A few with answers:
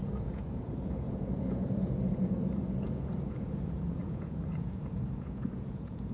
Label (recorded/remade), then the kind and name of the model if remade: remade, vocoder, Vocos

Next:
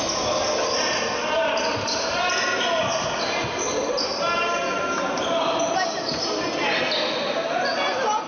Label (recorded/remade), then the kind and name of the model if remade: recorded